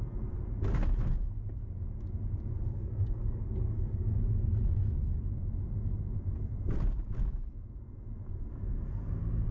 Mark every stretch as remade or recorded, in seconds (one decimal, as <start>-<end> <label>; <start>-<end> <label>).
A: 0.0-2.7 recorded; 2.7-4.2 remade; 4.2-9.5 recorded